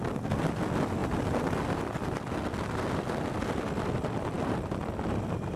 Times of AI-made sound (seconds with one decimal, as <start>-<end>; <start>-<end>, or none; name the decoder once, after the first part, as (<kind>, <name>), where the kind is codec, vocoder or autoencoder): none